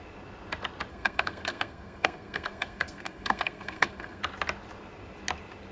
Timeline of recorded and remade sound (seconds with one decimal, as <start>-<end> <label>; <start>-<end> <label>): 0.0-0.9 recorded; 0.9-4.2 remade; 4.2-5.7 recorded